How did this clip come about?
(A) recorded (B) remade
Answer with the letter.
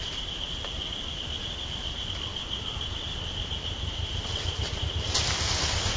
A